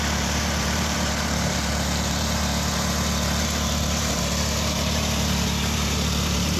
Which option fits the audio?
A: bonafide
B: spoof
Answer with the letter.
B